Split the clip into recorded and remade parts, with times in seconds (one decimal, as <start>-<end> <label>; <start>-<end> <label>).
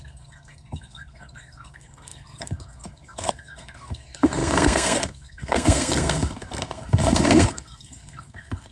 0.0-8.7 remade